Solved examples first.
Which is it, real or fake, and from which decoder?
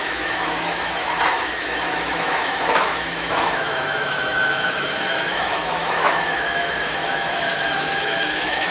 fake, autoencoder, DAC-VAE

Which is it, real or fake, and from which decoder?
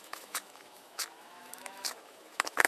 fake, autoencoder, DAC-VAE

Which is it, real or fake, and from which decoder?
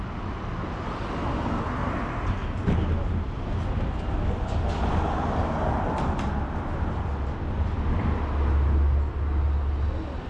real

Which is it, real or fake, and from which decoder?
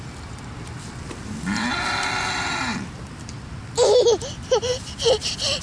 real